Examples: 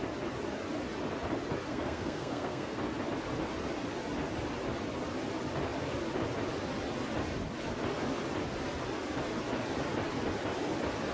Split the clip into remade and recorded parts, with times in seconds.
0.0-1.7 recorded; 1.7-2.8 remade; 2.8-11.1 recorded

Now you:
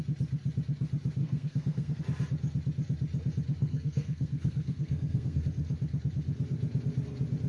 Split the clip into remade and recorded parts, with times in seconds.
0.0-1.2 recorded; 1.2-2.0 remade; 2.0-3.6 recorded; 3.6-5.4 remade; 5.4-7.5 recorded

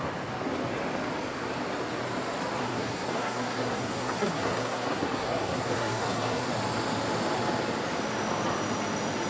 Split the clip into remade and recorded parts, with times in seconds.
0.0-2.6 recorded; 2.6-6.5 remade; 6.5-9.3 recorded

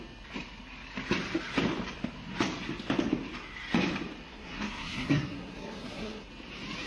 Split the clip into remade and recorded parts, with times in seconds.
0.0-4.3 recorded; 4.3-6.3 remade; 6.3-6.9 recorded

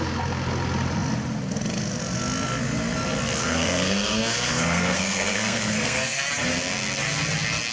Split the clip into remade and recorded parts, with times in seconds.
0.0-3.4 recorded; 3.4-6.3 remade; 6.3-7.7 recorded

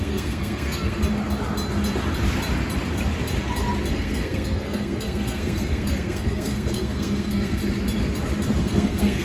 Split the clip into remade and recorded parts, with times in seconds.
0.0-1.0 remade; 1.0-3.9 recorded; 3.9-7.6 remade; 7.6-8.6 recorded; 8.6-9.2 remade

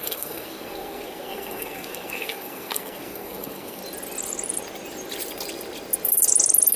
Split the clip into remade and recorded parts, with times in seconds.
0.0-3.8 remade; 3.8-6.8 recorded